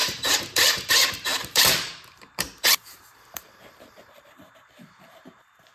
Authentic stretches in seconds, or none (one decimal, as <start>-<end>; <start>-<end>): none